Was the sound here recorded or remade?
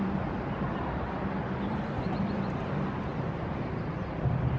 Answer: recorded